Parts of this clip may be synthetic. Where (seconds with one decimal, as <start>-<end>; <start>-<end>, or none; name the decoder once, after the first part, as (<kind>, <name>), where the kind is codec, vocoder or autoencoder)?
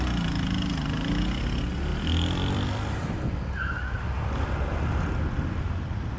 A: 1.9-5.6 (vocoder, BigVGAN v2)